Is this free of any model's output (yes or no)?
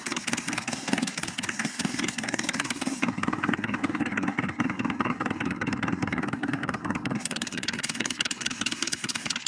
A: no